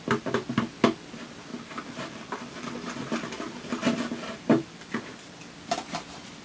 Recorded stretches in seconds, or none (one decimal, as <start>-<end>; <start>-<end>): 0.0-1.5; 5.3-6.4